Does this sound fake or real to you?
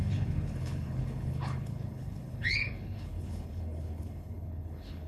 fake